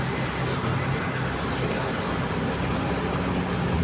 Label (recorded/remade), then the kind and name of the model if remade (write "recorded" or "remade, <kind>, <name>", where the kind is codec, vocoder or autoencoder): recorded